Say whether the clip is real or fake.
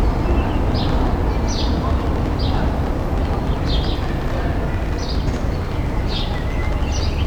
real